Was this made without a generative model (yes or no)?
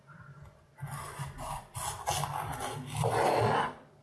yes